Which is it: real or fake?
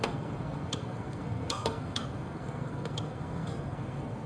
fake